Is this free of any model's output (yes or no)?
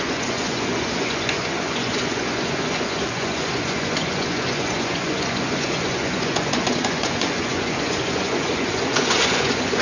no